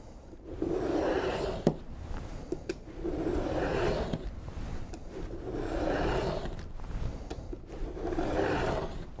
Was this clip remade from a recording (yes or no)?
yes